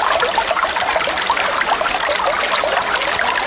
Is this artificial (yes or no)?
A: no